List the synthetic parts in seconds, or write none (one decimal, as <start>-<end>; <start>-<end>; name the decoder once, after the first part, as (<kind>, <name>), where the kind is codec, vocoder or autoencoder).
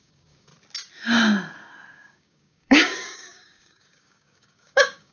0.0-0.5 (codec, DAC); 1.9-5.1